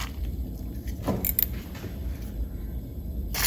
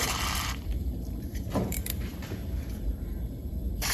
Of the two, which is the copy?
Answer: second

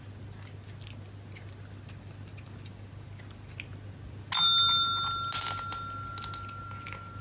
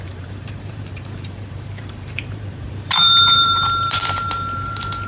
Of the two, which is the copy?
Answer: second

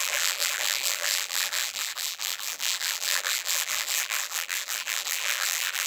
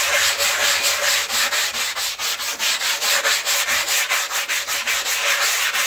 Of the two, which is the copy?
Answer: first